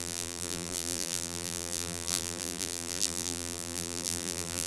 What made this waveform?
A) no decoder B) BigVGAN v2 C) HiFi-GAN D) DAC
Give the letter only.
B